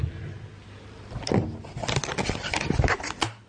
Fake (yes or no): no